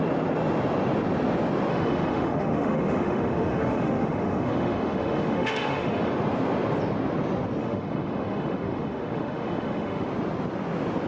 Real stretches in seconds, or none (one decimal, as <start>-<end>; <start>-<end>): 0.0-1.7; 6.1-7.6; 10.1-11.1